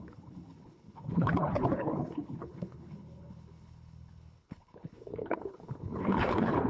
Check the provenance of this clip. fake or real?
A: fake